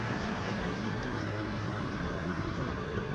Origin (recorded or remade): remade